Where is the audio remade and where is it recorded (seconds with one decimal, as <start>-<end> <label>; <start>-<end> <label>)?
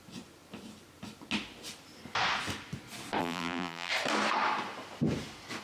0.0-3.2 recorded; 3.2-3.9 remade; 3.9-5.6 recorded